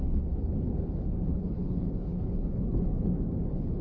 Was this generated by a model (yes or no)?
yes